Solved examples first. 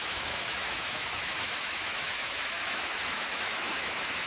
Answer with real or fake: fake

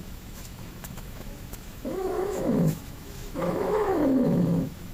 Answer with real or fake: fake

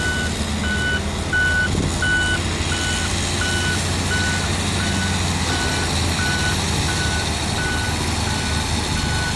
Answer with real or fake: real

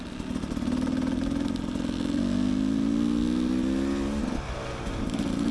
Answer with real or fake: real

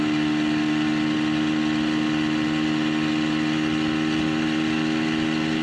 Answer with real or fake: real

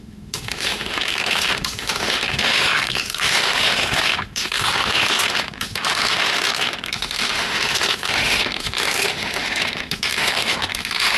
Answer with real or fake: fake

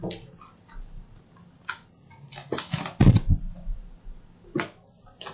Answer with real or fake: real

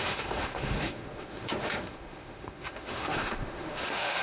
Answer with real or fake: fake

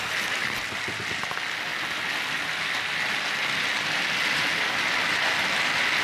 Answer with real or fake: real